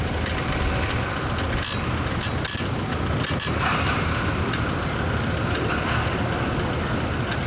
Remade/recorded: recorded